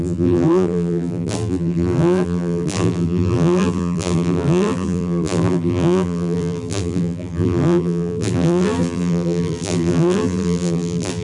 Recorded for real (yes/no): no